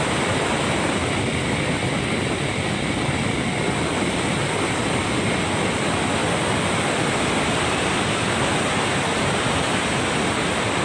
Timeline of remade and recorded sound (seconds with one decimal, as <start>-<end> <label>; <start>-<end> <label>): 0.0-10.8 recorded

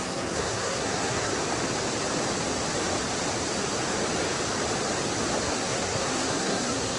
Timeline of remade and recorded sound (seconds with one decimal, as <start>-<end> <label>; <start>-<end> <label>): 0.0-1.3 remade; 1.3-5.5 recorded; 5.5-7.0 remade

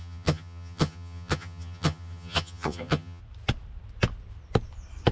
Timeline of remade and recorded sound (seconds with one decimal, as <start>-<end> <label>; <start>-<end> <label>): 0.0-3.2 remade; 3.2-5.1 recorded

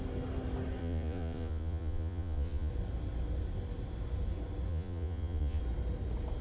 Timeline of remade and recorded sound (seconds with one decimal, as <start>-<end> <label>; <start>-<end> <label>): 0.0-0.8 recorded; 0.8-2.7 remade; 2.7-4.7 recorded; 4.7-5.6 remade; 5.6-6.4 recorded

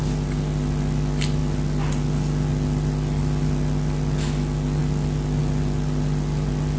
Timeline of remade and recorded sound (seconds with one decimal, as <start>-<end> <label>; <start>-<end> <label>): 0.0-6.8 recorded